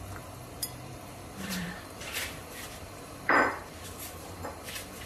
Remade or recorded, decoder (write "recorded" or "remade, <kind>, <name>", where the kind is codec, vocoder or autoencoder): remade, vocoder, BigVGAN v2